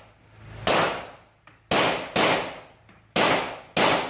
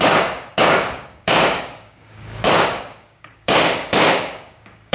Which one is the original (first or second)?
first